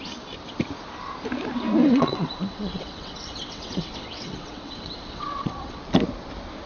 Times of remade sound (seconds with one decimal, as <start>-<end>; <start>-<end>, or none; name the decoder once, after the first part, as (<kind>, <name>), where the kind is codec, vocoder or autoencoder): 1.8-5.8 (vocoder, WaveNeXt)